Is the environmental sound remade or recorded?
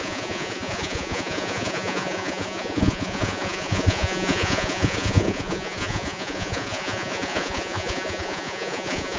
remade